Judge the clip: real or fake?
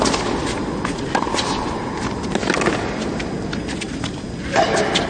real